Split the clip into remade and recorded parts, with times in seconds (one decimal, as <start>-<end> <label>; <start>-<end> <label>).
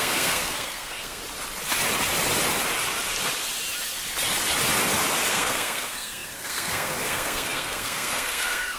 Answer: 0.0-1.2 remade; 1.2-5.3 recorded; 5.3-8.8 remade